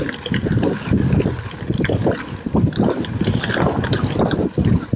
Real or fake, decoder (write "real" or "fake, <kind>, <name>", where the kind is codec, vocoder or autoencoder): real